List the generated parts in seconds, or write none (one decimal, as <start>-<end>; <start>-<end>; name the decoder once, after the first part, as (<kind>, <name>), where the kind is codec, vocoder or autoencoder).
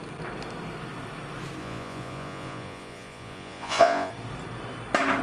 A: 1.6-4.1 (vocoder, Vocos)